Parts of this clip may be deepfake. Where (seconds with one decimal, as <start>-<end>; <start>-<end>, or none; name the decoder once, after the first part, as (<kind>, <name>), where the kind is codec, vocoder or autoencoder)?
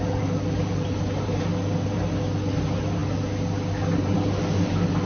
none